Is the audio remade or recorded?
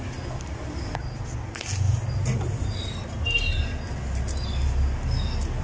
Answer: recorded